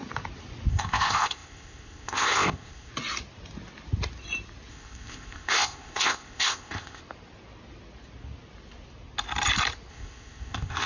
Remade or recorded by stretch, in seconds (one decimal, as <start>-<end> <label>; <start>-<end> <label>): 0.0-0.7 recorded; 0.7-2.9 remade; 2.9-4.7 recorded; 4.7-7.0 remade; 7.0-9.9 recorded; 9.9-10.9 remade